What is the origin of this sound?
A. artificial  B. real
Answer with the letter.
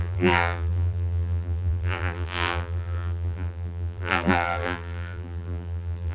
A